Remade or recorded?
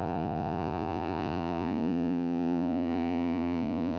remade